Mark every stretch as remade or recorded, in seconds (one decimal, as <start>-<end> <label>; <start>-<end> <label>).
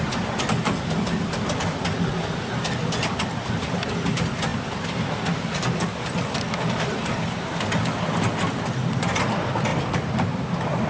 0.0-10.9 recorded